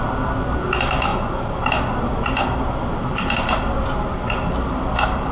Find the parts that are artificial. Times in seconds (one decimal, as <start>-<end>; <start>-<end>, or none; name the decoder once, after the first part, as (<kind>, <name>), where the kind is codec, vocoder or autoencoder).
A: 1.1-1.7 (vocoder, Vocos)